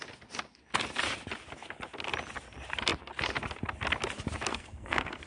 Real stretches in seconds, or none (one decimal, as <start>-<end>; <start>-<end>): 0.0-4.5